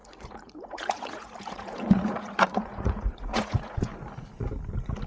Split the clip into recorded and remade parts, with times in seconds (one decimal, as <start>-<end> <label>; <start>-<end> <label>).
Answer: 0.0-3.9 remade; 3.9-5.1 recorded

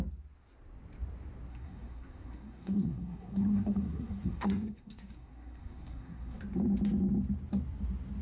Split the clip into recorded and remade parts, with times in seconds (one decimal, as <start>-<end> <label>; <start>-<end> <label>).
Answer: 0.0-1.5 recorded; 1.5-6.4 remade; 6.4-8.2 recorded

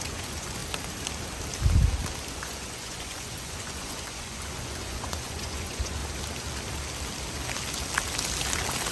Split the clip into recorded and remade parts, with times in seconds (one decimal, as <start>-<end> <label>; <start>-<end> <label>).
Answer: 0.0-0.6 remade; 0.6-2.3 recorded; 2.3-6.0 remade; 6.0-8.9 recorded

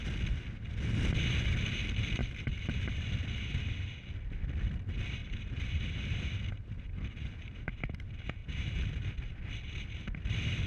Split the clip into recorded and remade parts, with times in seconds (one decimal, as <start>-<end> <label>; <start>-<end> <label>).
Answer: 0.0-2.2 recorded; 2.2-3.0 remade; 3.0-5.2 recorded; 5.2-7.8 remade; 7.8-8.4 recorded; 8.4-9.1 remade; 9.1-10.7 recorded